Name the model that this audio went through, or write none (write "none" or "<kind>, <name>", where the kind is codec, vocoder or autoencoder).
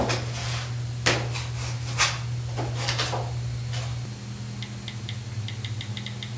none